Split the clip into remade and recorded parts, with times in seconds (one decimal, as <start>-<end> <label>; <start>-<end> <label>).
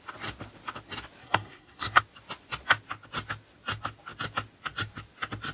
0.0-1.2 recorded; 1.2-2.0 remade; 2.0-5.5 recorded